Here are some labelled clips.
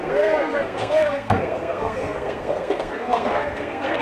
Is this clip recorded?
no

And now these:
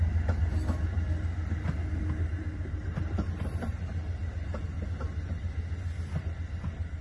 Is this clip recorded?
yes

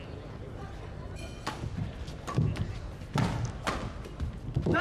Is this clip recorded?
yes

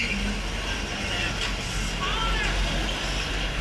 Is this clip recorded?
yes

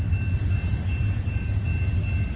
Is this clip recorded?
yes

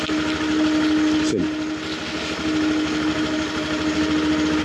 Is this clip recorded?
yes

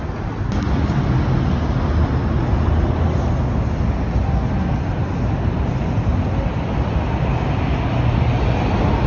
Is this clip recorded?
yes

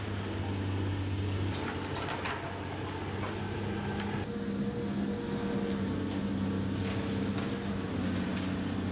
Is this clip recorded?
yes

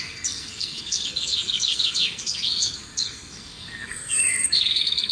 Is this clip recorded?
no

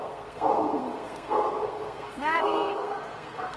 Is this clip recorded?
no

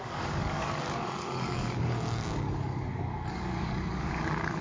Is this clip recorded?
no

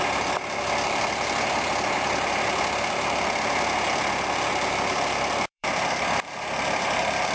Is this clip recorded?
no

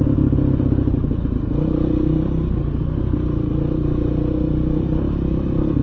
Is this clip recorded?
yes